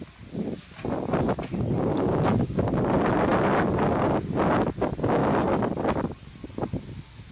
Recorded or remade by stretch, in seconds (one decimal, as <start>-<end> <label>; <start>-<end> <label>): 0.0-1.9 recorded; 1.9-2.6 remade; 2.6-7.3 recorded